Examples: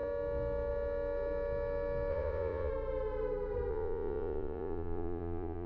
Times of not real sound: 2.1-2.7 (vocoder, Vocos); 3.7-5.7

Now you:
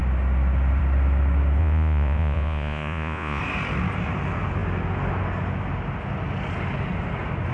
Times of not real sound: 1.6-3.4 (vocoder, Vocos)

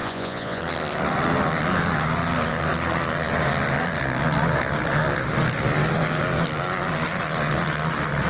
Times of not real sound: 0.0-0.6 (vocoder, Vocos)